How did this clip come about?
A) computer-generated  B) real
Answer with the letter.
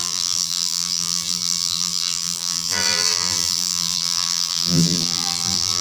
A